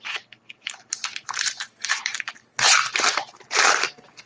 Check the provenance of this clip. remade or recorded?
remade